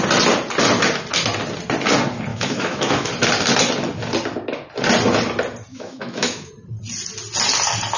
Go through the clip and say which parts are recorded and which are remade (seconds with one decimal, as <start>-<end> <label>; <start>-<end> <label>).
0.0-2.3 recorded; 2.3-3.1 remade; 3.1-5.7 recorded; 5.7-6.5 remade; 6.5-8.0 recorded